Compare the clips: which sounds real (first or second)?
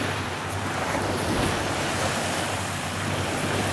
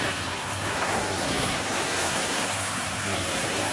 first